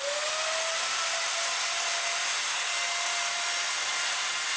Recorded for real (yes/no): yes